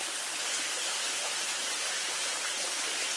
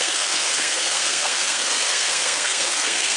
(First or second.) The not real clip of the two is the second